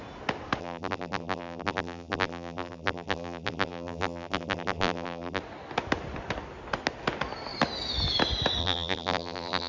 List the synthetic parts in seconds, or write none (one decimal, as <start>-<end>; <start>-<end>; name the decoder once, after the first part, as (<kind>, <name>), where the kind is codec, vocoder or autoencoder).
0.6-5.4 (vocoder, BigVGAN v2); 8.6-9.7